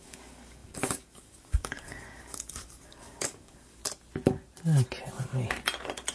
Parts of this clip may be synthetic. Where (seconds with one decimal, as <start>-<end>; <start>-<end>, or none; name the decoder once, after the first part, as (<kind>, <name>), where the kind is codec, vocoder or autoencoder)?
0.0-3.8 (codec, DAC)